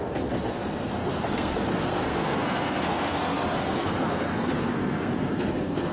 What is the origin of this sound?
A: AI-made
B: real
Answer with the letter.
A